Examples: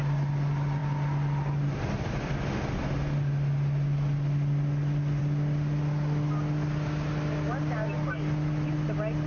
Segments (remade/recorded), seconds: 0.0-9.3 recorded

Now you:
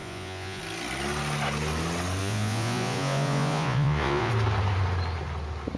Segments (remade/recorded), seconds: 0.0-0.6 remade; 0.6-2.2 recorded; 2.2-4.3 remade; 4.3-5.8 recorded

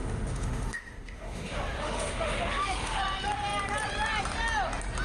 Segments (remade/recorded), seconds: 0.0-3.0 remade; 3.0-5.0 recorded